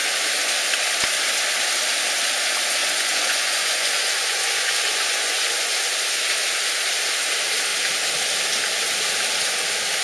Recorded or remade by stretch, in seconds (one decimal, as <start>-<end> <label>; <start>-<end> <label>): 0.0-2.8 recorded; 2.8-5.8 remade; 5.8-10.0 recorded